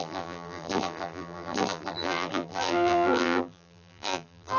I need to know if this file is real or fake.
fake